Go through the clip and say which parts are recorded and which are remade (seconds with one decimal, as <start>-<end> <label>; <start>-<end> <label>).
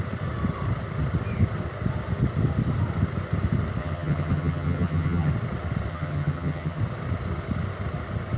0.0-3.8 recorded; 3.8-5.3 remade; 5.3-5.9 recorded; 5.9-6.8 remade; 6.8-8.4 recorded